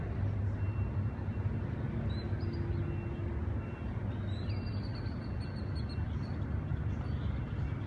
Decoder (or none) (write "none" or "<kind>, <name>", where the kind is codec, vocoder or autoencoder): none